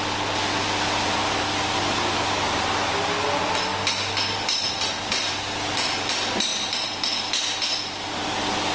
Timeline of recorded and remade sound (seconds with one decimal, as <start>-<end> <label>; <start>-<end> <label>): 0.0-8.7 recorded

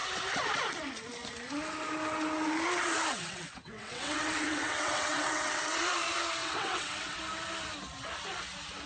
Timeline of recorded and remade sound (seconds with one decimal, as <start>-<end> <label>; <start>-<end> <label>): 0.0-3.1 recorded; 3.1-5.8 remade; 5.8-6.4 recorded; 6.4-7.2 remade; 7.2-8.9 recorded

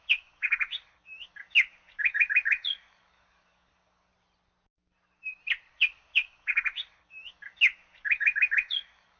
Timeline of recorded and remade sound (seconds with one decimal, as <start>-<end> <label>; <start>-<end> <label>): 0.0-4.1 remade; 4.1-5.7 recorded; 5.7-9.2 remade